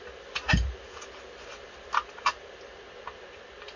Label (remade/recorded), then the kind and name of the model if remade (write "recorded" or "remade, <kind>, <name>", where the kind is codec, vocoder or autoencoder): recorded